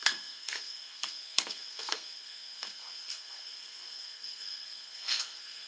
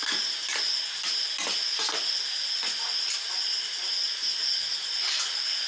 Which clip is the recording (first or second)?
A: second